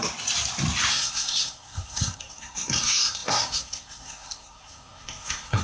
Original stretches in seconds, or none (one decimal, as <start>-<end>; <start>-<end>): 0.0-0.9